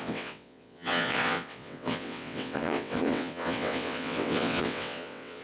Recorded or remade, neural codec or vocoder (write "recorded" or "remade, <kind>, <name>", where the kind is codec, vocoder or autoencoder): remade, vocoder, WaveNeXt